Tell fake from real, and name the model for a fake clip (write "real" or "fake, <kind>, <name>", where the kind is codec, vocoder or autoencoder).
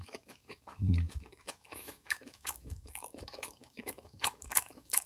fake, autoencoder, DAC-VAE